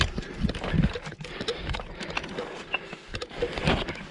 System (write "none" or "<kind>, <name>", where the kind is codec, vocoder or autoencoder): none